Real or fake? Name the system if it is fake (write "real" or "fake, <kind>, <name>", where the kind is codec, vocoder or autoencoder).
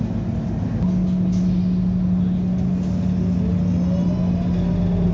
real